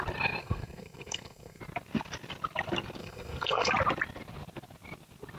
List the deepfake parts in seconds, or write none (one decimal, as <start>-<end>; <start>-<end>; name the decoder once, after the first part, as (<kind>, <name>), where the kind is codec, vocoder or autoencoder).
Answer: 0.4-1.6 (codec, SNAC); 3.0-3.7